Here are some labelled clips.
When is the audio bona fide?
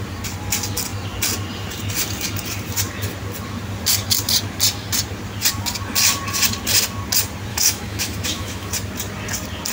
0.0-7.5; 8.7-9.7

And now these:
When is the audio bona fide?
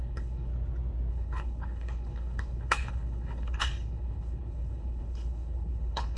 0.5-1.1